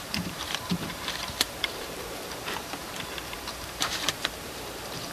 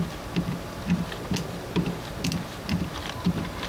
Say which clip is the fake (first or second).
first